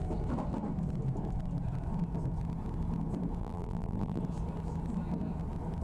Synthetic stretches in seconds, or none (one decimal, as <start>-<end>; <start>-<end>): 3.4-4.2